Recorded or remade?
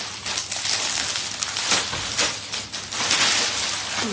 recorded